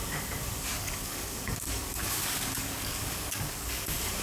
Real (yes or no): no